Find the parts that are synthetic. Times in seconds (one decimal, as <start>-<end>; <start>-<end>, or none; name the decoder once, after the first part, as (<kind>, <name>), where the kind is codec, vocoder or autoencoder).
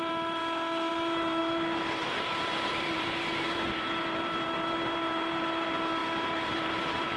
0.0-0.4 (vocoder, BigVGAN v2); 0.9-7.2